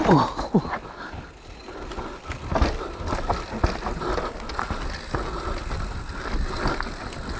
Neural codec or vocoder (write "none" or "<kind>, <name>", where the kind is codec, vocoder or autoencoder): none